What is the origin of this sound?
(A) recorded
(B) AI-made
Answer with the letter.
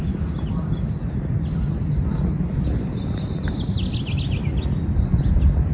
A